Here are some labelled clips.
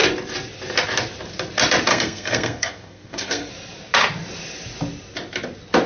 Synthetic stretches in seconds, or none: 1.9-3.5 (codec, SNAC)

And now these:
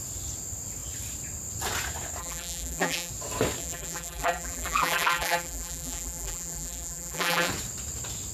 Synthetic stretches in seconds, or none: 2.2-3.1 (vocoder, BigVGAN v2); 3.6-7.5